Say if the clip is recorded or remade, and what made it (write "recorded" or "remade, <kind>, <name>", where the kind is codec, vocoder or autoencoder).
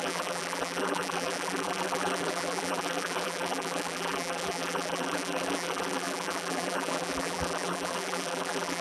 remade, vocoder, BigVGAN v2